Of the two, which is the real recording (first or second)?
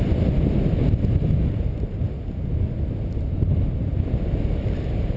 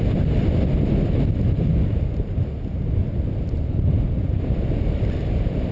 first